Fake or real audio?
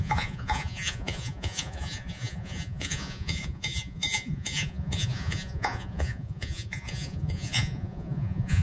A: fake